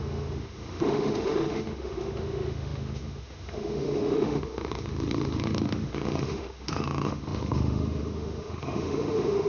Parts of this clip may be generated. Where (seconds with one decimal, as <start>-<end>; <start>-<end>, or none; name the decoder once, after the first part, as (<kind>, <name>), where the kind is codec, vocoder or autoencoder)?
0.0-9.5 (autoencoder, DAC-VAE)